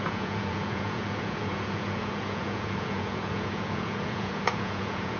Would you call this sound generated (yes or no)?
yes